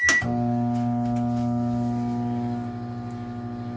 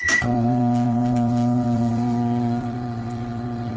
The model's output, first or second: second